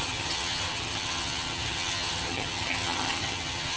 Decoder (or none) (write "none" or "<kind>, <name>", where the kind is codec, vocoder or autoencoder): vocoder, HiFi-GAN